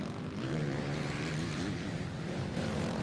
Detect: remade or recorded remade